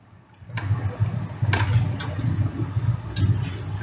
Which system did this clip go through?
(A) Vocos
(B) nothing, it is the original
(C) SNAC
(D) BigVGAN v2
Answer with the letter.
B